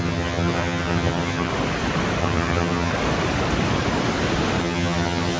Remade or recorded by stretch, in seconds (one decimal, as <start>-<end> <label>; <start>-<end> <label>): 0.0-1.5 remade; 1.5-2.2 recorded; 2.2-2.9 remade; 2.9-4.6 recorded; 4.6-5.4 remade